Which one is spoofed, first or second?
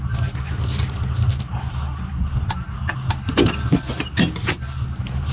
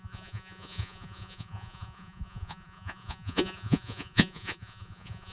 second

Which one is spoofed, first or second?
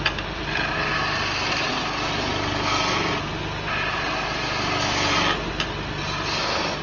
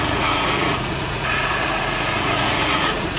second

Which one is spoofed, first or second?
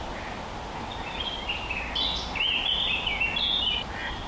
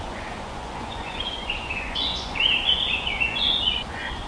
second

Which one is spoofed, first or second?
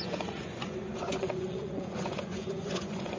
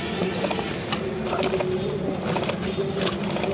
first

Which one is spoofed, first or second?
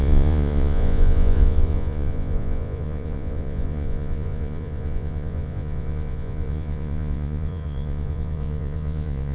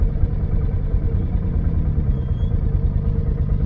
first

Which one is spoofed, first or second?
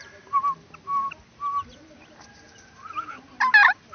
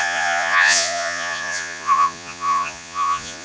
second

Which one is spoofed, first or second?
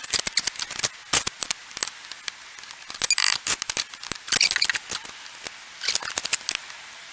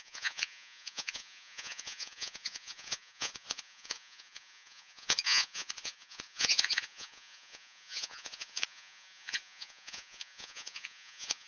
second